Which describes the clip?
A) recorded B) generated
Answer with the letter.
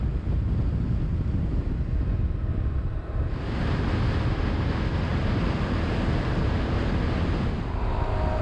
A